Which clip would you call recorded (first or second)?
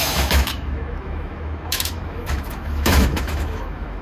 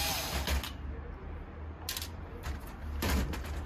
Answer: second